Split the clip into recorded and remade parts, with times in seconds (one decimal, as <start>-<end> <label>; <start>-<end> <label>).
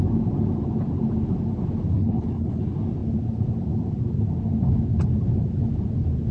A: 0.0-1.9 recorded; 1.9-2.6 remade; 2.6-6.3 recorded